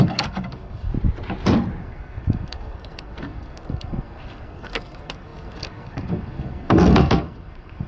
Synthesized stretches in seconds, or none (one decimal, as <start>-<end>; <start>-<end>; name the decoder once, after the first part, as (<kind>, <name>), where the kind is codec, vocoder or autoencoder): 0.0-0.9 (codec, SNAC); 1.8-7.9